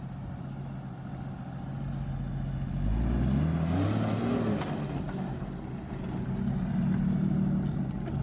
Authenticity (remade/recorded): recorded